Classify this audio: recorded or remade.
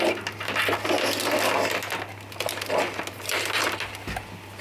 recorded